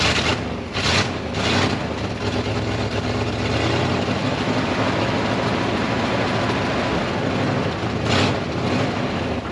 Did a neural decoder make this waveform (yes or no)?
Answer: no